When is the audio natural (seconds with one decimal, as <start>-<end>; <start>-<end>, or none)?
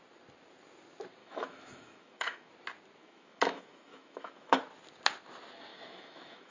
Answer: 0.0-1.2; 2.5-3.0; 4.6-5.7